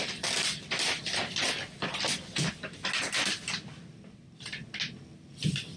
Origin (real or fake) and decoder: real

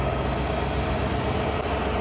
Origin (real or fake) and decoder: real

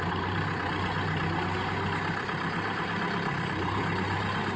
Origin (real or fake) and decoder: real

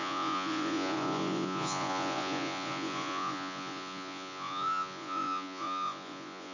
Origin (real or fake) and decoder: fake, vocoder, Vocos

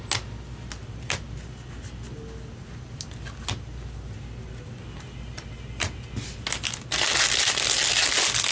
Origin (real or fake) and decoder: real